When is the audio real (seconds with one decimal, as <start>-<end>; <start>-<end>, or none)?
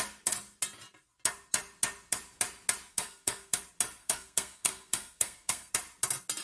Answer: 0.0-2.9; 3.6-4.0; 5.7-6.4